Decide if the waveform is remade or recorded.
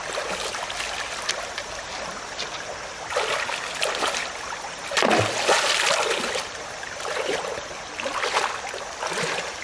recorded